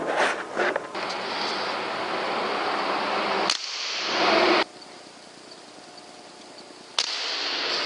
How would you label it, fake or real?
real